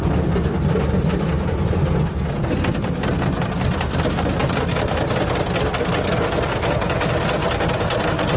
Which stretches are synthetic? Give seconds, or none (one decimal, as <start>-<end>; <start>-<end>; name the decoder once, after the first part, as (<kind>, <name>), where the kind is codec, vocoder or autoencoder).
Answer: 7.4-8.4 (vocoder, BigVGAN v2)

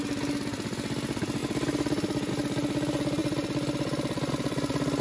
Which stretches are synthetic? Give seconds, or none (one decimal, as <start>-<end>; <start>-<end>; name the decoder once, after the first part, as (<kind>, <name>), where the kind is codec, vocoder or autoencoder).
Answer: none